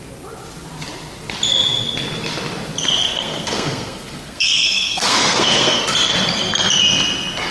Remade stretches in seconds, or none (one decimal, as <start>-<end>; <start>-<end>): 3.0-5.8